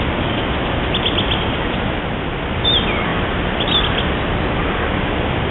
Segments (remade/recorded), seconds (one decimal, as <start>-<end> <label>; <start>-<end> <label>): 0.0-5.5 recorded